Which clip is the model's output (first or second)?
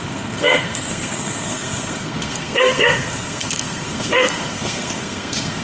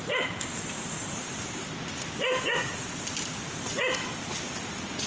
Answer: first